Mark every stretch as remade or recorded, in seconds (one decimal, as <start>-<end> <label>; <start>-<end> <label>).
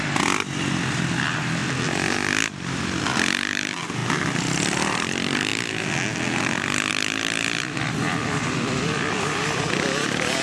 0.0-1.6 remade; 1.6-3.0 recorded; 3.0-4.0 remade; 4.0-4.6 recorded; 4.6-5.5 remade; 5.5-6.9 recorded; 6.9-10.4 remade